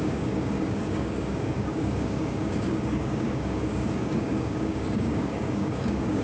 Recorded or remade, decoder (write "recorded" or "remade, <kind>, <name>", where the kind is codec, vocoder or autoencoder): remade, codec, DAC